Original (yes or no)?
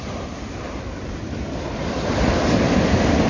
yes